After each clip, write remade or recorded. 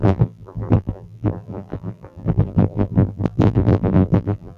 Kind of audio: remade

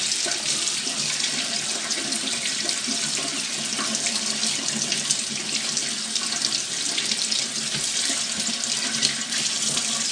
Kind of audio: recorded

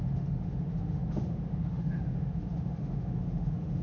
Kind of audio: remade